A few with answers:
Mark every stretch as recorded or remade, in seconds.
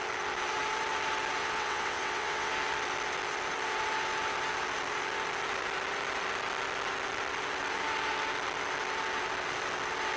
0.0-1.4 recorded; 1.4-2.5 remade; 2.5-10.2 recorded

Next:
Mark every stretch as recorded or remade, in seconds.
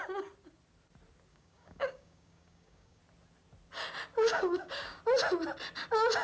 0.0-1.3 recorded; 1.3-3.0 remade; 3.0-4.3 recorded; 4.3-5.0 remade; 5.0-6.2 recorded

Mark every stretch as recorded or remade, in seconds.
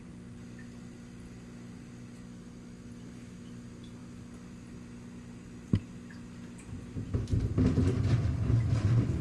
0.0-9.2 recorded